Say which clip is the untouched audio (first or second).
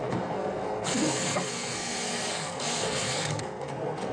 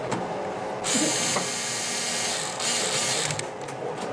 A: second